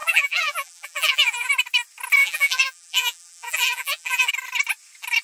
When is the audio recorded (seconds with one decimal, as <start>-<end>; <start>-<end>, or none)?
1.5-2.2; 4.3-5.2